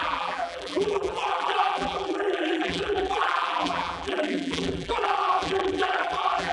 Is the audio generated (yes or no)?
yes